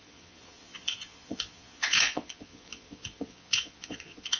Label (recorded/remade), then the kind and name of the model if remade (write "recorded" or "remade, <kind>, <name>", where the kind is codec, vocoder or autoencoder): remade, vocoder, Vocos